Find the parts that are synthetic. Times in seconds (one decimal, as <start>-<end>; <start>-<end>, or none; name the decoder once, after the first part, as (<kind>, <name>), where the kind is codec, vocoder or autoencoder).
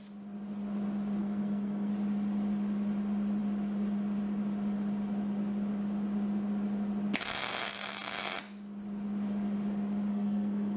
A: 1.2-1.9 (codec, SNAC); 10.1-10.8